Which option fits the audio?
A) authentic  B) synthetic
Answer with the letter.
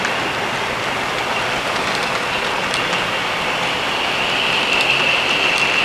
B